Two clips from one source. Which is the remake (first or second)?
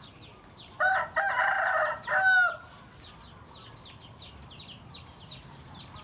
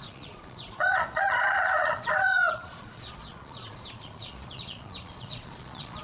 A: second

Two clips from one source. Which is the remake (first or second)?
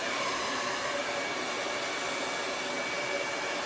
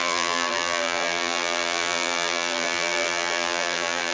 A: second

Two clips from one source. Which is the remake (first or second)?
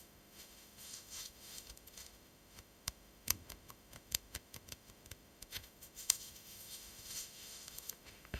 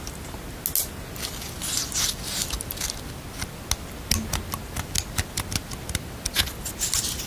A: first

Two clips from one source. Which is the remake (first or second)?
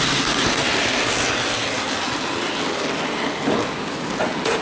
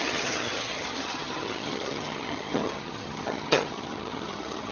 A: second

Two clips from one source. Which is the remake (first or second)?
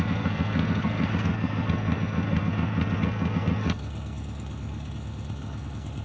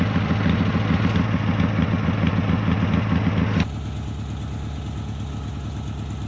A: first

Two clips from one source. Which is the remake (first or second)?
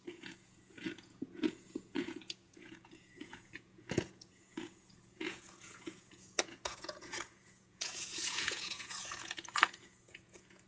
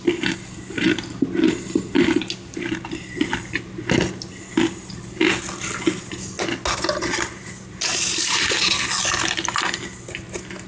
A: first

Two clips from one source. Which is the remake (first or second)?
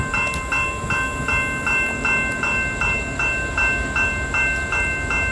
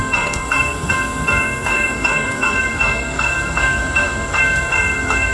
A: second